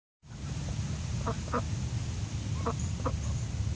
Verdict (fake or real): real